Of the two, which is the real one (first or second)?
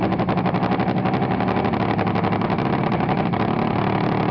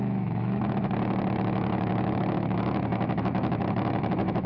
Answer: first